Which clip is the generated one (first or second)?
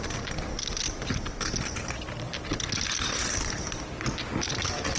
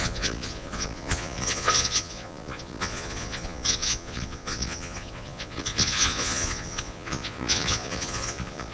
second